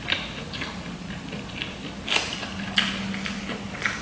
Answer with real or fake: real